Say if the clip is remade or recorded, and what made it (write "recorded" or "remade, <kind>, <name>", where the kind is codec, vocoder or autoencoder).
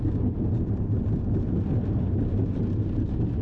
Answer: recorded